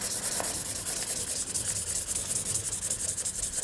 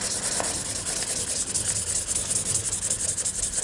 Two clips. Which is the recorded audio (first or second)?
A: second